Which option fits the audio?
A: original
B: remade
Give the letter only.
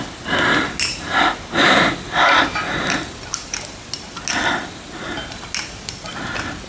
A